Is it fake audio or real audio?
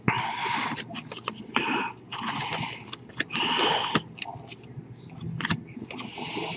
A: real